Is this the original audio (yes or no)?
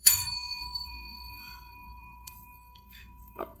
no